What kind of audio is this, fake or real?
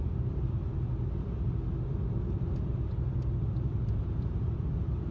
real